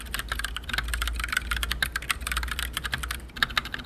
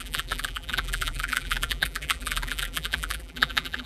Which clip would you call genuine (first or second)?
first